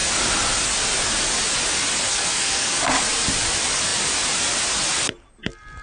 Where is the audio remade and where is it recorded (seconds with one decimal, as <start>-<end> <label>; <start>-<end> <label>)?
0.0-2.1 recorded; 2.1-2.8 remade; 2.8-5.8 recorded